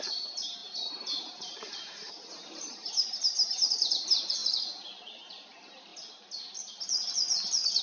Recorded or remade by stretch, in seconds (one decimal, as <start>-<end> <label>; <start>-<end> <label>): 0.0-4.4 remade; 4.4-5.1 recorded; 5.1-5.9 remade; 5.9-7.8 recorded